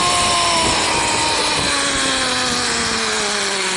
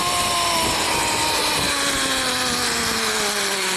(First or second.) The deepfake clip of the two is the second